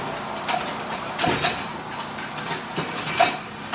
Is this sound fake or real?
real